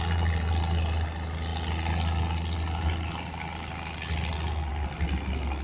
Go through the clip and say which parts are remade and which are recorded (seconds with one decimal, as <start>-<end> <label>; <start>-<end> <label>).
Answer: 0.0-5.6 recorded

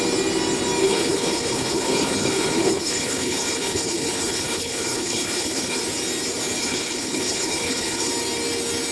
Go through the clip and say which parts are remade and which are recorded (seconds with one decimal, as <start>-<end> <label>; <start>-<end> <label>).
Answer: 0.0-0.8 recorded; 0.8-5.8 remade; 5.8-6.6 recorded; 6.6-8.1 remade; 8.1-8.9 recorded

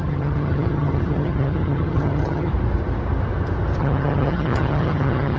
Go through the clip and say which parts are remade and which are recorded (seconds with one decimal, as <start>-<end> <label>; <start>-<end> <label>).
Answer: 0.0-2.5 remade; 2.5-3.8 recorded; 3.8-5.4 remade